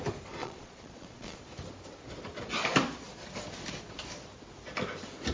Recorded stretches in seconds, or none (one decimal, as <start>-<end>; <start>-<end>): 0.0-0.4; 1.4-5.3